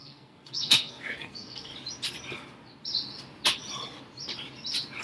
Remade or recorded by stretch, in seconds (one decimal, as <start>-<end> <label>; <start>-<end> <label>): 0.0-1.7 remade; 1.7-5.0 recorded